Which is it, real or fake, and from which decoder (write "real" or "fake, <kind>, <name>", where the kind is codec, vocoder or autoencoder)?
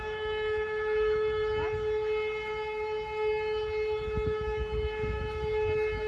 fake, autoencoder, DAC-VAE